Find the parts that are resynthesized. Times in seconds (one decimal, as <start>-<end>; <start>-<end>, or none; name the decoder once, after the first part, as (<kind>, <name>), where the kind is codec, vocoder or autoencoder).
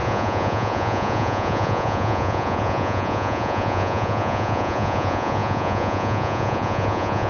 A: 0.0-7.3 (vocoder, Vocos)